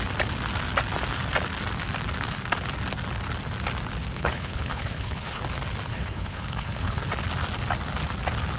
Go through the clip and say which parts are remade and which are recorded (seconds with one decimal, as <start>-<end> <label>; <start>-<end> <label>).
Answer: 0.0-4.1 recorded; 4.1-5.4 remade; 5.4-5.9 recorded; 5.9-7.0 remade; 7.0-8.6 recorded